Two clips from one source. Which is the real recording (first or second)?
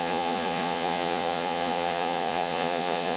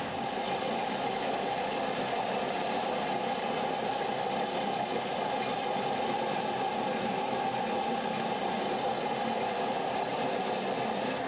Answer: second